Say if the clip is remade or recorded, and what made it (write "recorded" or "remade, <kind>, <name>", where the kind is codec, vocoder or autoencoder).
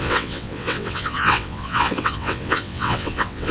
remade, vocoder, WaveNeXt